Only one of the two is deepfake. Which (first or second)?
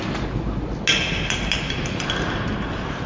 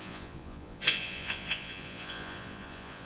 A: second